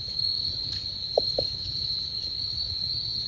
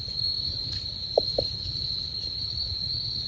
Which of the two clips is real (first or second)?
first